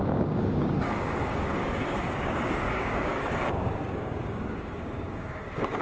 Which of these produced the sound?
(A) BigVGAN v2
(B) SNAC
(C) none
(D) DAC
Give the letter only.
D